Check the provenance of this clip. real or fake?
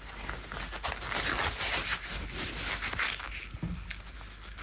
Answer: real